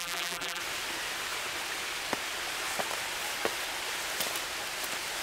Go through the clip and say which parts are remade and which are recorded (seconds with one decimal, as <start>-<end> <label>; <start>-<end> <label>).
0.0-0.6 remade; 0.6-5.2 recorded